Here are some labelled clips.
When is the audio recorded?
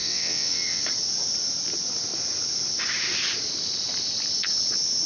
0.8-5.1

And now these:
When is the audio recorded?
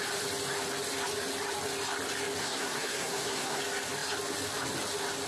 0.0-2.4; 3.6-5.3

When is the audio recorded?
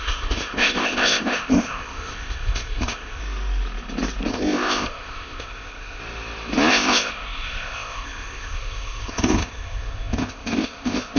3.2-4.3; 6.0-6.7